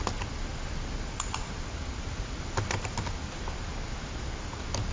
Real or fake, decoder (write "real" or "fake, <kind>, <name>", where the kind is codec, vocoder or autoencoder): real